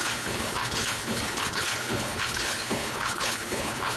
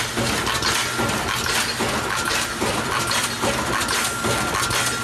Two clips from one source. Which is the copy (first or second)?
first